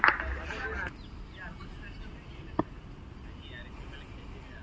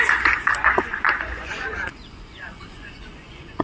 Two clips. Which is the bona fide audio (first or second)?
first